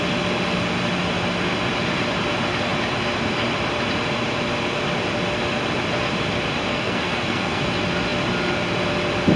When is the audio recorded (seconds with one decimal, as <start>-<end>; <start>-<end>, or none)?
0.0-6.7; 7.6-9.4